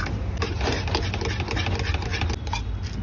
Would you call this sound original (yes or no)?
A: yes